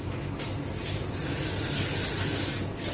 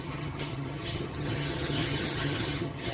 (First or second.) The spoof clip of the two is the second